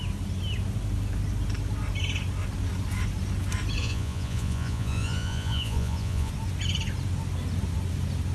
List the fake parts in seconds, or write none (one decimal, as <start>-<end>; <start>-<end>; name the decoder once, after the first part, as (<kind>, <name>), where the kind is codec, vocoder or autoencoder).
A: 3.8-6.3 (vocoder, Vocos)